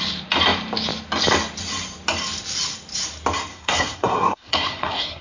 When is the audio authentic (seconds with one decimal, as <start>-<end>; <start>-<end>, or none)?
0.0-3.5